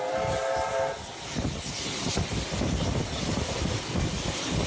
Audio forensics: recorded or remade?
recorded